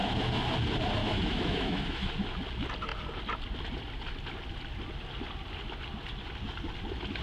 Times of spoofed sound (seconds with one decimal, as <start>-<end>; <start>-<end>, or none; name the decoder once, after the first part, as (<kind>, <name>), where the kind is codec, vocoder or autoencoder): 0.0-0.5 (autoencoder, DAC-VAE); 1.0-2.1